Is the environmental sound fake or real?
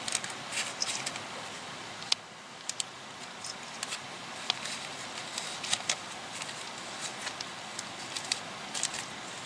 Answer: real